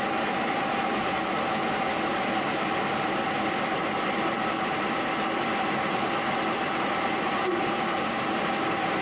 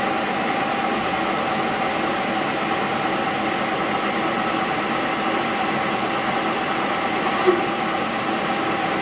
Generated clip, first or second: first